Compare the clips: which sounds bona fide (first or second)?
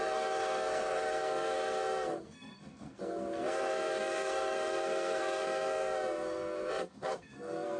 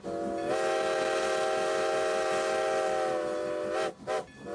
second